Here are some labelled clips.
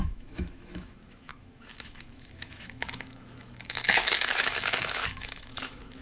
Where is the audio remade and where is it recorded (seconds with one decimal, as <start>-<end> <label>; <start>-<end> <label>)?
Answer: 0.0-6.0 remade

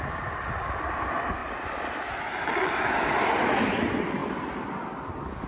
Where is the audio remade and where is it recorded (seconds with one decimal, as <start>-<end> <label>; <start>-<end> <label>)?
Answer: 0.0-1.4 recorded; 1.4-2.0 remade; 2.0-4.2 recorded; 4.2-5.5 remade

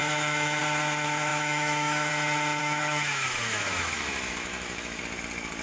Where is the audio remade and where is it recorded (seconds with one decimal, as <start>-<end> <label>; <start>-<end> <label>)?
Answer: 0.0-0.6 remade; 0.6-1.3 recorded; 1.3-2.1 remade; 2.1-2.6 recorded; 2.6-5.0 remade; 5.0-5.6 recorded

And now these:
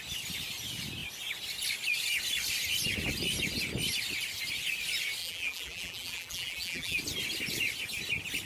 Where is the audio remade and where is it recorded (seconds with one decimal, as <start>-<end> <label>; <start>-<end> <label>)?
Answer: 0.0-5.2 recorded; 5.2-7.0 remade; 7.0-8.5 recorded

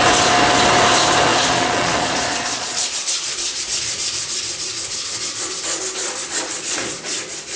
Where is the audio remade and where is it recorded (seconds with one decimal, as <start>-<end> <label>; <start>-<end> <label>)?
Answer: 0.0-1.3 recorded; 1.3-3.6 remade; 3.6-6.0 recorded; 6.0-7.0 remade; 7.0-7.6 recorded